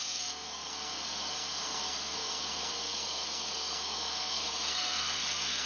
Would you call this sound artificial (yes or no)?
yes